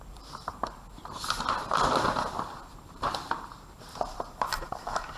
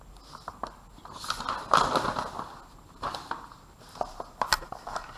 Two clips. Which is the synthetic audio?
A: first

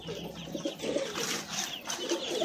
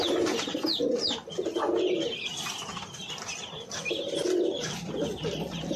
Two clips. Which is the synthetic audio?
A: second